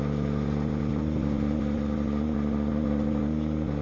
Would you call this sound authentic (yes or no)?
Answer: yes